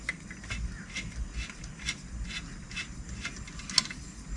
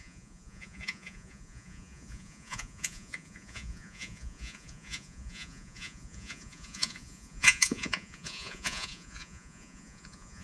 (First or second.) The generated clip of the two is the second